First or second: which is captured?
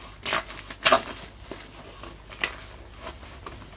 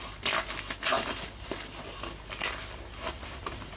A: first